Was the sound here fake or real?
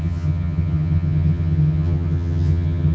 fake